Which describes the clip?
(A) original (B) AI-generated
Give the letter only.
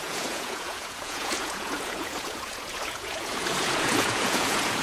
B